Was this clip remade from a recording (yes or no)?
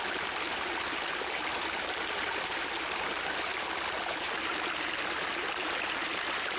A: no